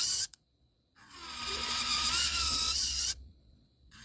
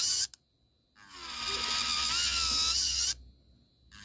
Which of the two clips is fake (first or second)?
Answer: first